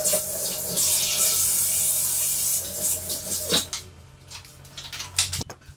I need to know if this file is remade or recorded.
recorded